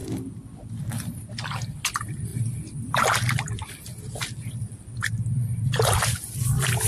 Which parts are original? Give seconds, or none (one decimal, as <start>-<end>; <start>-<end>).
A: 0.7-2.3; 6.4-6.9